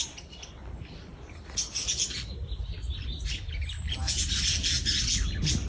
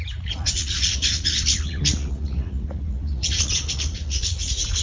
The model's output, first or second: second